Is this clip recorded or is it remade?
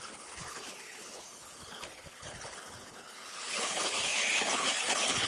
remade